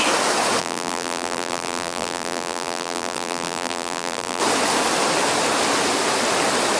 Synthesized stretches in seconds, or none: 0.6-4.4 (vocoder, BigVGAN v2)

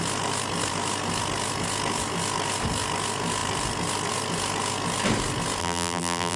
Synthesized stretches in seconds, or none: 5.6-6.4 (vocoder, BigVGAN v2)

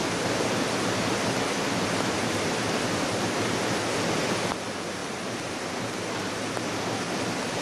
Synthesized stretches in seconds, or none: 0.0-4.2 (vocoder, BigVGAN v2)

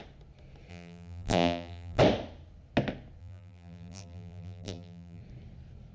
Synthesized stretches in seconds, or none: 0.7-2.0 (vocoder, BigVGAN v2); 3.2-5.2

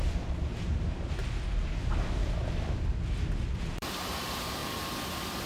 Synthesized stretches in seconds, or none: 0.0-1.2 (vocoder, BigVGAN v2); 3.5-4.6

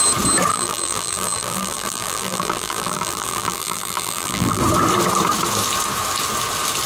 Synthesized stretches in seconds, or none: 0.5-4.6 (vocoder, BigVGAN v2)